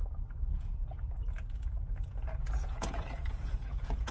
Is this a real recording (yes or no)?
no